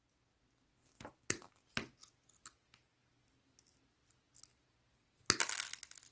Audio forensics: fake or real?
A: real